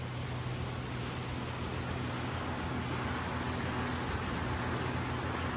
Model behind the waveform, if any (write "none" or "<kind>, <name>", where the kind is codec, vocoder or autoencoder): none